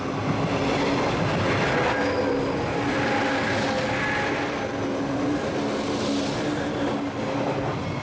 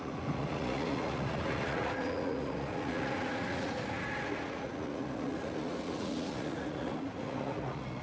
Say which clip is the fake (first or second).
second